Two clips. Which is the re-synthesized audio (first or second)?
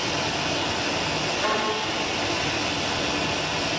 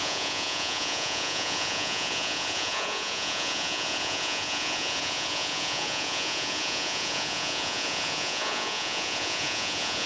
second